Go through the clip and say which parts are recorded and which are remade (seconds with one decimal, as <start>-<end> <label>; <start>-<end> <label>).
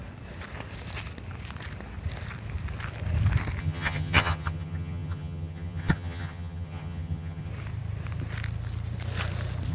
0.0-3.6 recorded; 3.6-7.5 remade; 7.5-9.7 recorded